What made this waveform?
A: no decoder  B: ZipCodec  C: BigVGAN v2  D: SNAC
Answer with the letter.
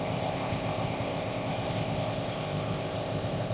B